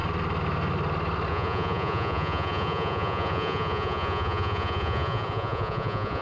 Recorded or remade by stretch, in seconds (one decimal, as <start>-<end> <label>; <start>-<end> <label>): 0.0-1.3 recorded; 1.3-6.2 remade